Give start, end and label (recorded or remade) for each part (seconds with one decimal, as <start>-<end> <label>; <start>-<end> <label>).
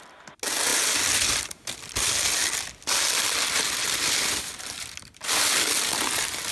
0.0-6.5 recorded